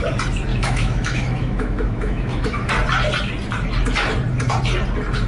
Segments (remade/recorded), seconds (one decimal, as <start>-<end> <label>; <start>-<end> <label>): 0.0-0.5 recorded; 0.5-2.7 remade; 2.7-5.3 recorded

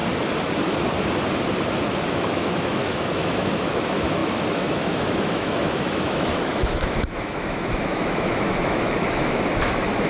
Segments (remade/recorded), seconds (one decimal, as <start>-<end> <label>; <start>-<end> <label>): 0.0-2.1 recorded; 2.1-10.1 remade

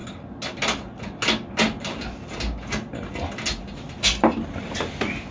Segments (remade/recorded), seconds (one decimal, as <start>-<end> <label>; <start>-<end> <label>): 0.0-5.3 recorded